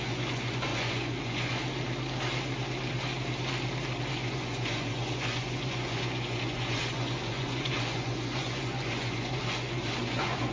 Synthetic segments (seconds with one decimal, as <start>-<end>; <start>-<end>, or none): 0.0-1.6; 4.1-10.5